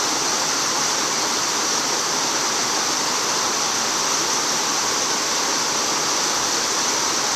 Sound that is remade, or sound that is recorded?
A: recorded